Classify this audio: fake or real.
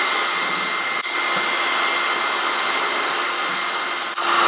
real